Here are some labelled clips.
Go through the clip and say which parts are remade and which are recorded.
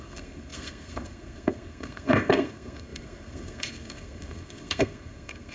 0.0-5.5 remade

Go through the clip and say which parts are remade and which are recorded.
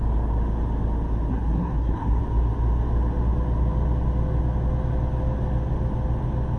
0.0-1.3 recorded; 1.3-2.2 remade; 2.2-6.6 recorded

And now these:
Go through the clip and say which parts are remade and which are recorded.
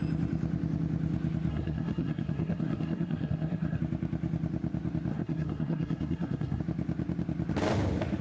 0.0-1.5 recorded; 1.5-3.8 remade; 3.8-5.1 recorded; 5.1-6.6 remade; 6.6-8.2 recorded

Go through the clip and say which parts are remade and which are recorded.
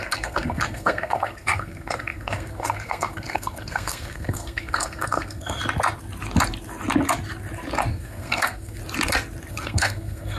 0.0-5.6 remade; 5.6-7.9 recorded; 7.9-8.8 remade; 8.8-9.5 recorded; 9.5-10.4 remade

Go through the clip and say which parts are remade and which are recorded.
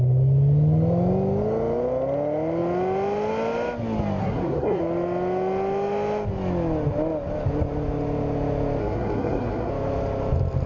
0.0-4.2 recorded; 4.2-4.8 remade; 4.8-8.8 recorded; 8.8-9.7 remade; 9.7-10.7 recorded